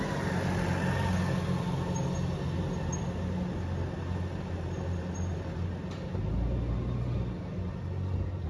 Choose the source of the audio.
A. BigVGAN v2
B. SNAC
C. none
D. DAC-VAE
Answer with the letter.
C